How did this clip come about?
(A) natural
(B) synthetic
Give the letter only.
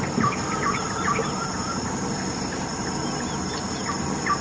A